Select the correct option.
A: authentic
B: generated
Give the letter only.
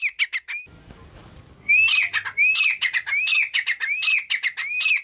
A